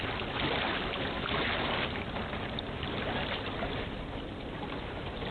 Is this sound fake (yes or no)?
no